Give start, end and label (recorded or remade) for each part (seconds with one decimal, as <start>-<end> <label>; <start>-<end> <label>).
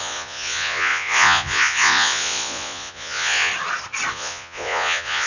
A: 0.0-3.5 remade; 3.5-4.1 recorded; 4.1-5.3 remade